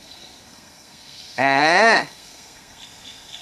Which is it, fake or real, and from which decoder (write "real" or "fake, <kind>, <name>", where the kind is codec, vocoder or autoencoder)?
fake, codec, SNAC